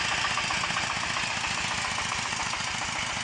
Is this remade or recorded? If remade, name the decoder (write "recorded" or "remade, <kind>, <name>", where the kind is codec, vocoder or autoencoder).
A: recorded